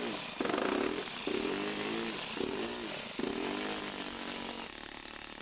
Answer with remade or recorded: recorded